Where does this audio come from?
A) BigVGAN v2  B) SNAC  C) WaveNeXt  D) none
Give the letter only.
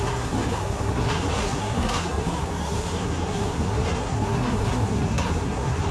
B